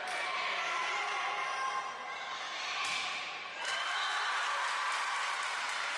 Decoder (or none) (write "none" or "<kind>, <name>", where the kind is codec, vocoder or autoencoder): none